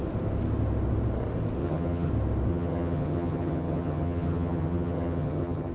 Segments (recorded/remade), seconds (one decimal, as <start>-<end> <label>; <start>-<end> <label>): 0.0-1.6 recorded; 1.6-2.1 remade; 2.1-2.5 recorded; 2.5-5.7 remade